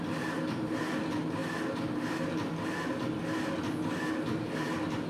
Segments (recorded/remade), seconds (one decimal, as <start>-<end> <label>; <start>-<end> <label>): 0.0-5.1 recorded